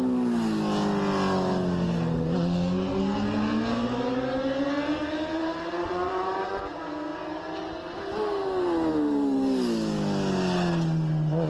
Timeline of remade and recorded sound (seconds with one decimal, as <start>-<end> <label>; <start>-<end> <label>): 0.0-5.4 recorded; 5.4-6.6 remade; 6.6-11.5 recorded